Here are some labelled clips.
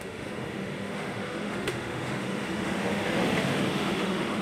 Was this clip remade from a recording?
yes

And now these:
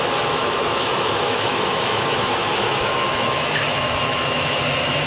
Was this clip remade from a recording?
yes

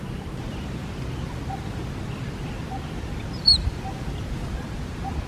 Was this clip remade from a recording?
no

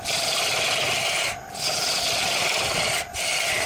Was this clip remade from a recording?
no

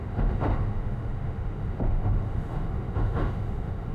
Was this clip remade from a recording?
yes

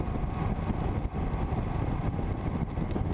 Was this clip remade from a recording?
no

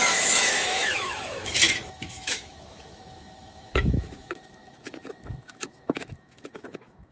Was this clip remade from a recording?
yes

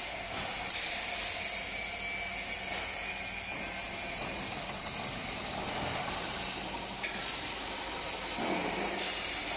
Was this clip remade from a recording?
no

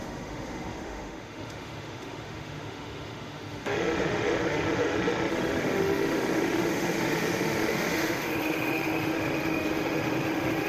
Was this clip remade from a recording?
yes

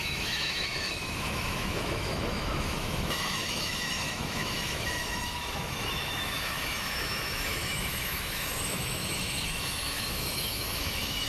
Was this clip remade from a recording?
yes